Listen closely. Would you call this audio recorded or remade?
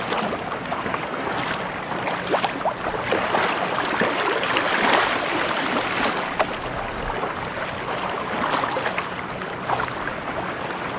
recorded